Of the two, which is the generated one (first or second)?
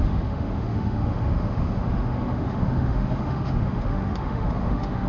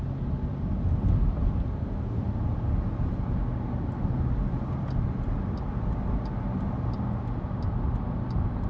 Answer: first